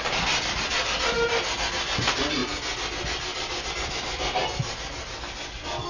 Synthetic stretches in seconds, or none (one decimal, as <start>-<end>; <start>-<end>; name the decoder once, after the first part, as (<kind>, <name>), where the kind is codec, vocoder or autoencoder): none